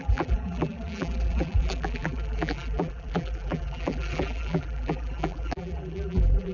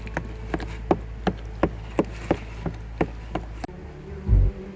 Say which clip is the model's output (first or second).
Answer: first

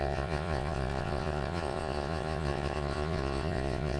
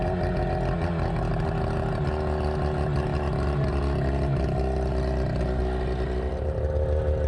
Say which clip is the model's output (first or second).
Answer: first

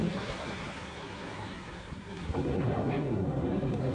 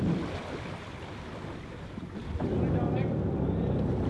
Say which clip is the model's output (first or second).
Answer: first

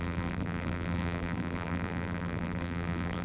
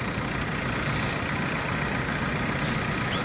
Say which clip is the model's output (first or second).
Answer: first